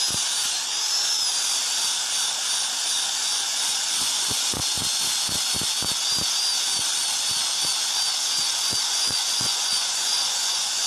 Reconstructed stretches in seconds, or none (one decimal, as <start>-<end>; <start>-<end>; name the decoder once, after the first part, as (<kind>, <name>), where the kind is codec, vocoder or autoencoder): 3.2-4.6 (vocoder, Vocos); 8.2-10.9